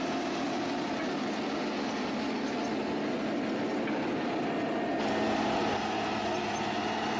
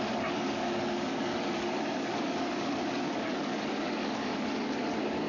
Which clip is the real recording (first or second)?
first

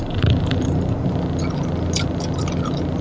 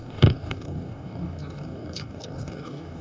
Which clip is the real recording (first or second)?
first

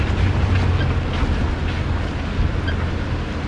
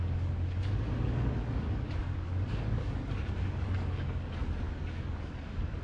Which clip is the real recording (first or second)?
first